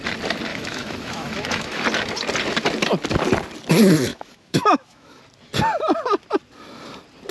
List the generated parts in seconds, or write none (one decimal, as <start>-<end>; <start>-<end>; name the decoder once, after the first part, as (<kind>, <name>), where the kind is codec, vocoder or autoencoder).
0.5-1.8 (autoencoder, DAC-VAE); 4.1-5.2

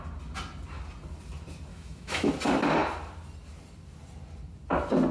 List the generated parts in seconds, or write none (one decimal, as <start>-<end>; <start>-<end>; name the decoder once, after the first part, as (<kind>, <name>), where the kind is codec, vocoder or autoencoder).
1.7-2.3 (autoencoder, DAC-VAE)

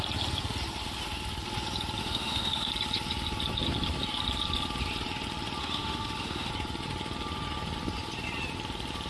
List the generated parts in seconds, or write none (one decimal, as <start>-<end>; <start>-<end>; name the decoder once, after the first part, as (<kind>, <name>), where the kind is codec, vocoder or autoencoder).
2.0-2.7 (autoencoder, DAC-VAE); 5.6-6.5

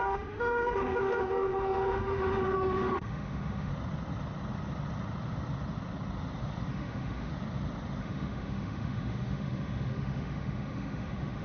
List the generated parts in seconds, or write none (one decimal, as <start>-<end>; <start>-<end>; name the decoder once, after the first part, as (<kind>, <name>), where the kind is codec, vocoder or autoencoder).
0.0-3.7 (autoencoder, DAC-VAE); 6.7-7.3; 8.0-11.4

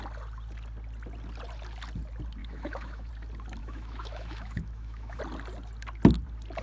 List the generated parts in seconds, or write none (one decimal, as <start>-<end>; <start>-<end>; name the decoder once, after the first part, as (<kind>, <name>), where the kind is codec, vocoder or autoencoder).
2.4-3.1 (autoencoder, DAC-VAE); 3.6-5.2